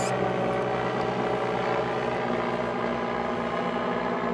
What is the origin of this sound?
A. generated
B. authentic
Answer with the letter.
B